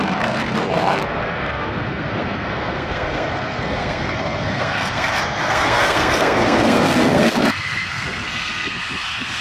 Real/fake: fake